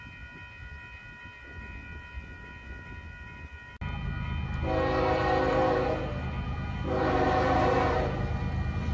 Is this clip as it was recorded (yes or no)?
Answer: yes